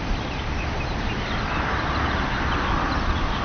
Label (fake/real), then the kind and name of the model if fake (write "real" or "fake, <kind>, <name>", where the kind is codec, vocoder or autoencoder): real